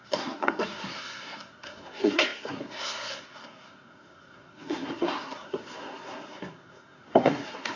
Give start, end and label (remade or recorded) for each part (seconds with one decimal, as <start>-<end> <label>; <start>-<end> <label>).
0.0-7.8 remade